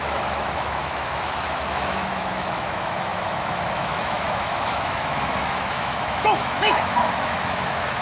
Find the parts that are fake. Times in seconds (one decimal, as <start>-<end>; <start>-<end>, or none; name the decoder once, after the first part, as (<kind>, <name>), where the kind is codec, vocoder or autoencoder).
0.0-8.0 (autoencoder, DAC-VAE)